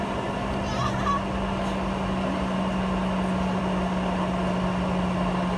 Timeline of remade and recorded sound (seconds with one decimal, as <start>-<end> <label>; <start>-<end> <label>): 0.0-5.6 recorded